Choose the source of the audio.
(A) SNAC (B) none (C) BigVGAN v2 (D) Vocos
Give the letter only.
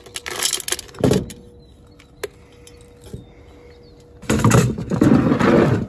B